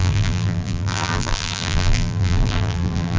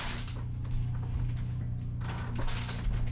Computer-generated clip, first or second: first